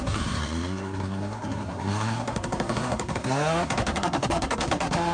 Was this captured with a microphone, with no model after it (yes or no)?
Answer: no